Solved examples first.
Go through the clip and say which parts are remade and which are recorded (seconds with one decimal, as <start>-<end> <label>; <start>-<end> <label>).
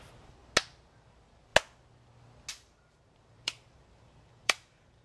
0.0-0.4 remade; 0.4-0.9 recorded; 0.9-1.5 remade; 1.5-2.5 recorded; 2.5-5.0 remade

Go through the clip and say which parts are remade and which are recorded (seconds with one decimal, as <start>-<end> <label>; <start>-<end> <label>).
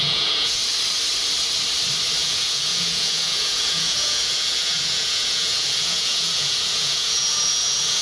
0.0-0.6 remade; 0.6-2.2 recorded; 2.2-8.0 remade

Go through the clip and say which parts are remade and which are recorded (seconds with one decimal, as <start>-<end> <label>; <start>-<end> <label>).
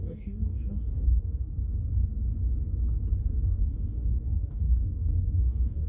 0.0-1.5 remade; 1.5-3.2 recorded; 3.2-5.9 remade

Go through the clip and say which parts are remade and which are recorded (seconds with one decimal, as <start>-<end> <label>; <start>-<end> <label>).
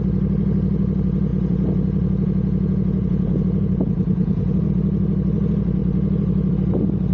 0.0-1.3 recorded; 1.3-4.7 remade; 4.7-7.1 recorded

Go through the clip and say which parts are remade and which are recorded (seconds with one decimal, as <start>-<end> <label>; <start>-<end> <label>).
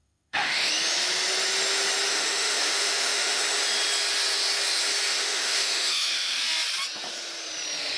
0.0-0.7 remade; 0.7-2.1 recorded; 2.1-3.4 remade; 3.4-5.1 recorded; 5.1-6.4 remade; 6.4-8.0 recorded